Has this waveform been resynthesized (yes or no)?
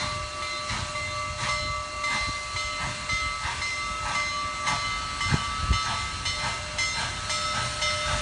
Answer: no